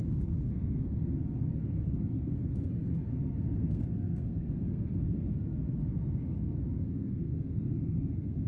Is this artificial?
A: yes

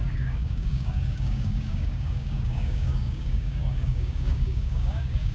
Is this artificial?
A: yes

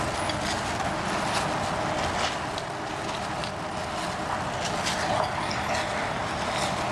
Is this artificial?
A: no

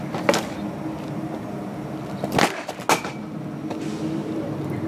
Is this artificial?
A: no